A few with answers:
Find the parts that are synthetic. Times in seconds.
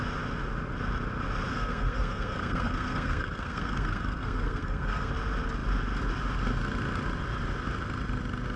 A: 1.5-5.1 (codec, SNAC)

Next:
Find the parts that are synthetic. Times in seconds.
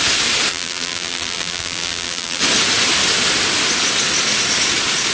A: 0.5-2.4 (vocoder, BigVGAN v2)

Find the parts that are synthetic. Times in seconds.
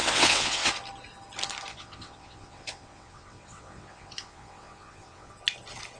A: 0.0-0.7 (vocoder, WaveNeXt); 1.7-5.3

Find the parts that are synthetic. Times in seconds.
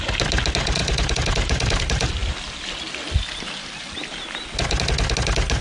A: 0.8-1.8 (vocoder, BigVGAN v2)